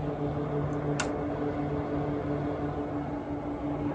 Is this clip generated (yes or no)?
no